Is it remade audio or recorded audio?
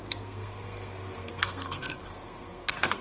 remade